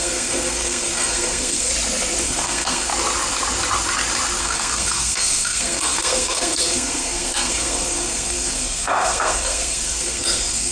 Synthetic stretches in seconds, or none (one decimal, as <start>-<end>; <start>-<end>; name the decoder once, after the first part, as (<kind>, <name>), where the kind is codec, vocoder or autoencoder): 0.0-1.7 (codec, SNAC); 2.2-2.9; 4.4-10.7